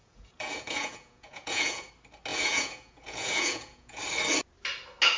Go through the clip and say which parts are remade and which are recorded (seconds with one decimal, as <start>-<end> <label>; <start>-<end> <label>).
0.0-1.9 remade; 1.9-2.3 recorded; 2.3-4.0 remade; 4.0-5.2 recorded